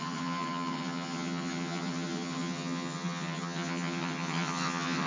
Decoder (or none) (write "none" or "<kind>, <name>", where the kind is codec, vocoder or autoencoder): vocoder, HiFi-GAN